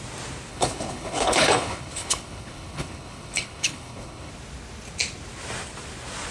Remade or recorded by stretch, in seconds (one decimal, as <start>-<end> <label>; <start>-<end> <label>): 0.0-0.5 recorded; 0.5-4.3 remade; 4.3-6.3 recorded